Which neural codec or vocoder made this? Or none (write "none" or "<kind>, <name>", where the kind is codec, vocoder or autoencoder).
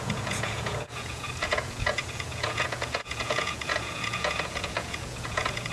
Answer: vocoder, Vocos